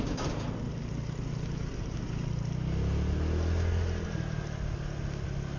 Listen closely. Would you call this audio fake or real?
real